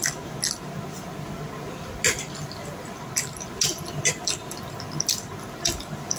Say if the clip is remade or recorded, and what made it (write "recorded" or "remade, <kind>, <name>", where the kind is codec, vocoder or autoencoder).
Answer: recorded